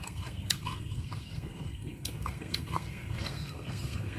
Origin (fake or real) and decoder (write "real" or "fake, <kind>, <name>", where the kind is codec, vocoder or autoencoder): fake, codec, SNAC